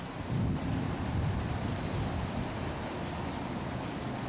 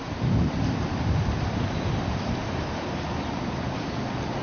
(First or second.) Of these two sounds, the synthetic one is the second